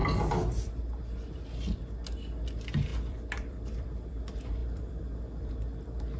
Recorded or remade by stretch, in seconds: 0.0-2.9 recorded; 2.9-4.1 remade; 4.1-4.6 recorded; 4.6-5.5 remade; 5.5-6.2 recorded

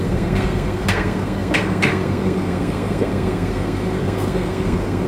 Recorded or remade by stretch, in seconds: 0.0-5.1 remade

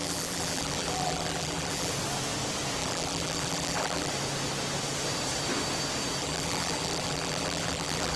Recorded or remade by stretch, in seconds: 0.0-1.9 remade; 1.9-2.8 recorded; 2.8-4.1 remade; 4.1-6.2 recorded; 6.2-8.2 remade

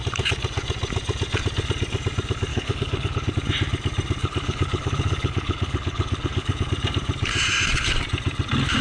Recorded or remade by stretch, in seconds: 0.0-2.5 recorded; 2.5-3.3 remade; 3.3-4.2 recorded; 4.2-6.7 remade; 6.7-8.8 recorded

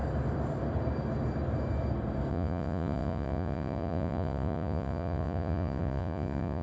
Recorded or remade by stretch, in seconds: 0.0-2.3 recorded; 2.3-6.6 remade

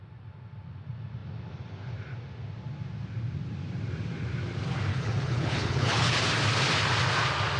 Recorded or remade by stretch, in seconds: 0.0-4.9 recorded; 4.9-6.2 remade; 6.2-7.6 recorded

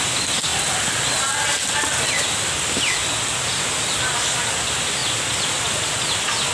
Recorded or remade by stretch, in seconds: 0.0-6.5 recorded

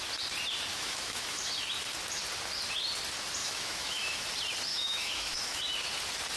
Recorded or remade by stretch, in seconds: 0.0-0.7 recorded; 0.7-1.5 remade; 1.5-3.4 recorded; 3.4-4.2 remade; 4.2-4.7 recorded; 4.7-5.6 remade; 5.6-6.4 recorded